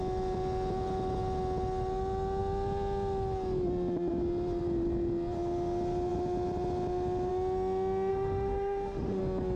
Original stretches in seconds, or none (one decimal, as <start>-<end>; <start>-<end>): 0.0-8.1; 9.2-9.6